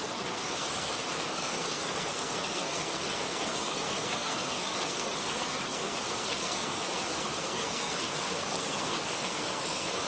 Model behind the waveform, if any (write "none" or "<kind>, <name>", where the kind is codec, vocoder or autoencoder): codec, SNAC